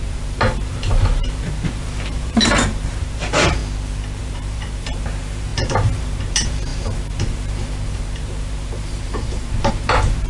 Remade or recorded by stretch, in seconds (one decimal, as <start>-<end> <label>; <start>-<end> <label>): 0.0-3.6 remade; 3.6-4.2 recorded; 4.2-10.3 remade